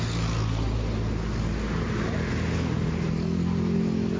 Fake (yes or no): no